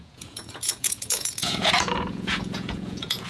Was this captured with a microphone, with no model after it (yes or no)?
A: no